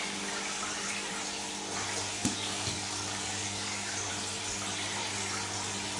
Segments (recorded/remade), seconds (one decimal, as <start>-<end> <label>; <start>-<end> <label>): 0.0-2.2 recorded; 2.2-4.1 remade; 4.1-6.0 recorded